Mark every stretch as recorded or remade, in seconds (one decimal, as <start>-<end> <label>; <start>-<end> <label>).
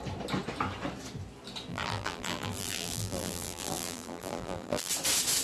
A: 0.0-1.7 recorded; 1.7-4.9 remade; 4.9-5.4 recorded